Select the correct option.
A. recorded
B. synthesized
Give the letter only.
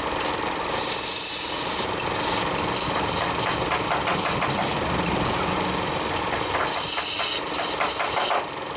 A